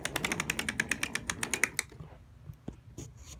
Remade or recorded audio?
recorded